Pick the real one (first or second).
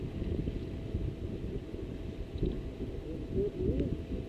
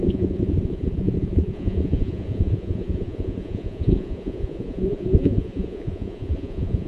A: first